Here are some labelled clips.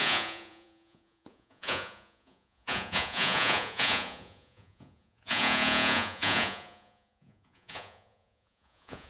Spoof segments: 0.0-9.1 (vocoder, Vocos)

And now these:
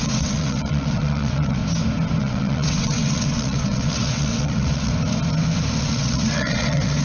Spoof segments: 0.0-1.6 (vocoder, WaveNeXt); 2.2-4.9; 5.8-7.0

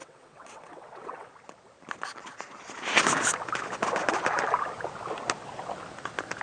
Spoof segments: 0.0-1.3 (vocoder, WaveNeXt)

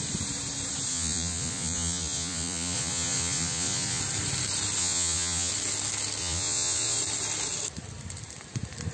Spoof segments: 0.9-4.0 (vocoder, Vocos); 4.8-5.5; 6.2-7.0

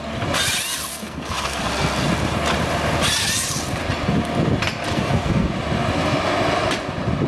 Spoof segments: 0.9-1.7 (codec, SNAC); 4.9-5.5